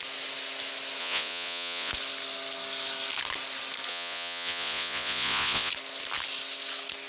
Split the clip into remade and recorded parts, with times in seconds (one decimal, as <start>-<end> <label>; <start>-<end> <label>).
0.0-1.0 recorded; 1.0-1.9 remade; 1.9-3.9 recorded; 3.9-5.7 remade; 5.7-7.1 recorded